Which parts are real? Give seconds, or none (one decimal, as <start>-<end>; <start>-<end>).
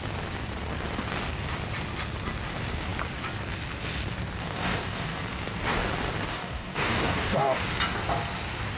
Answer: 0.0-4.4; 5.2-6.3; 7.6-8.8